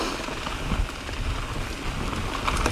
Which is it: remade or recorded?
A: recorded